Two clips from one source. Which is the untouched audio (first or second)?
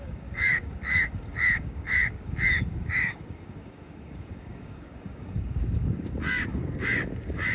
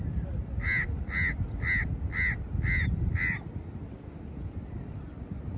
second